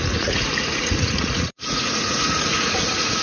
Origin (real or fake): fake